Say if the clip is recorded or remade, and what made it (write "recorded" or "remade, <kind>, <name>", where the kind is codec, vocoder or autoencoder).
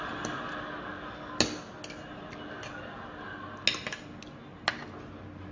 recorded